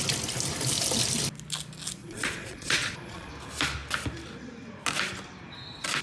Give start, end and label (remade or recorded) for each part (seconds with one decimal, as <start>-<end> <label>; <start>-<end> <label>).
0.0-2.0 recorded; 2.0-3.3 remade; 3.3-6.0 recorded